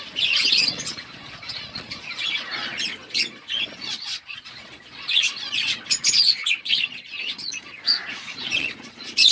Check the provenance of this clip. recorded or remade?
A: remade